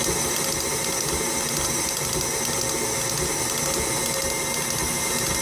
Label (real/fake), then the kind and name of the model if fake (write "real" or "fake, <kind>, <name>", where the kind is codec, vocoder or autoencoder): real